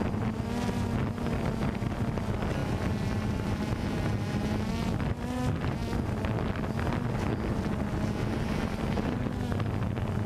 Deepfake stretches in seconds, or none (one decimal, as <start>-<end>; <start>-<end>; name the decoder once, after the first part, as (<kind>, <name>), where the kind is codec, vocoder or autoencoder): none